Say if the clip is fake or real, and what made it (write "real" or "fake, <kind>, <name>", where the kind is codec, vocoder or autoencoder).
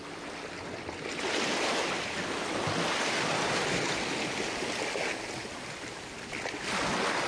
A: real